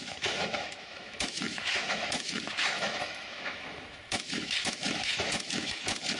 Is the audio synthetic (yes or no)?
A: yes